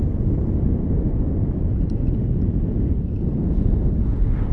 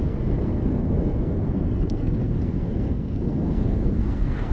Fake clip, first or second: second